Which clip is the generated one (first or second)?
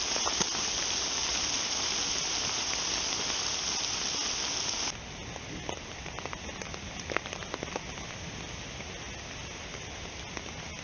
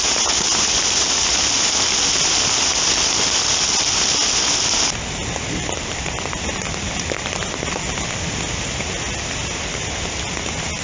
second